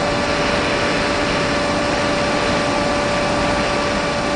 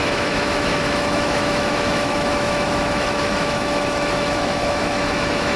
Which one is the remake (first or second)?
second